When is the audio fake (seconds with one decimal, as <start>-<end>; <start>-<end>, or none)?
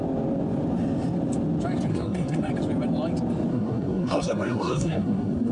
1.9-2.5; 3.5-5.5